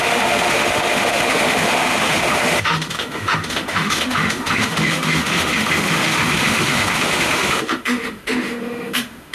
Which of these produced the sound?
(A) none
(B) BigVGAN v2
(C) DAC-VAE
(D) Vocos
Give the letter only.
C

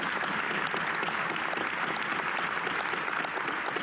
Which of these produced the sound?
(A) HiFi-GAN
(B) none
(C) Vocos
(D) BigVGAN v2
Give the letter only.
B